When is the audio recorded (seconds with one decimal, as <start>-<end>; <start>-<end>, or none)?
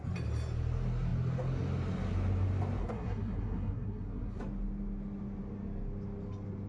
0.0-2.8; 4.4-6.7